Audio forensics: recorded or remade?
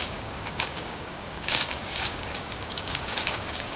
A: remade